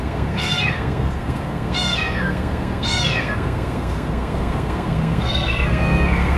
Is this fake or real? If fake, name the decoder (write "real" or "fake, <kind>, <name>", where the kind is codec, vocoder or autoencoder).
fake, codec, SNAC